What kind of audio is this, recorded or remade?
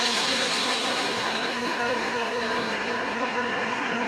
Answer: remade